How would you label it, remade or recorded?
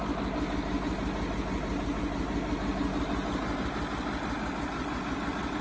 recorded